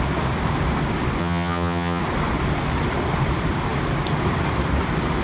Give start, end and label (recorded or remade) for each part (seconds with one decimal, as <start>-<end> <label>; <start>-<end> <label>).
0.0-1.2 recorded; 1.2-2.0 remade; 2.0-5.2 recorded